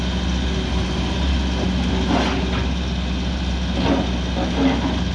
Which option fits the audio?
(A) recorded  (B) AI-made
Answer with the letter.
A